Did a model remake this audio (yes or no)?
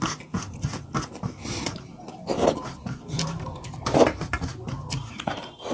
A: no